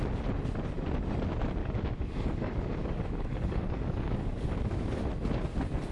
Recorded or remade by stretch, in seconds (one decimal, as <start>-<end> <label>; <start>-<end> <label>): 0.0-1.6 recorded; 1.6-5.1 remade; 5.1-5.9 recorded